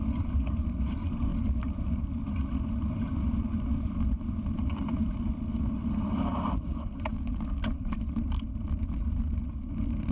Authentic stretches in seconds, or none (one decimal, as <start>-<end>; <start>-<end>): 0.0-10.1